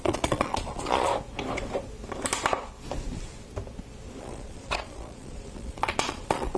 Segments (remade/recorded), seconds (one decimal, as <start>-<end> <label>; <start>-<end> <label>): 0.0-1.1 remade; 1.1-4.2 recorded; 4.2-6.6 remade